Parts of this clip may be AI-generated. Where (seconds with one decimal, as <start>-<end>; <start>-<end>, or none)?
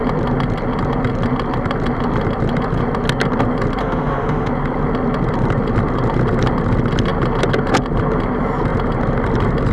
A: 3.8-4.5